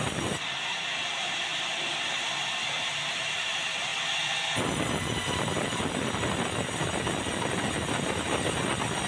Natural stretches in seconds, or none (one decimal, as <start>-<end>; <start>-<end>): 3.9-9.1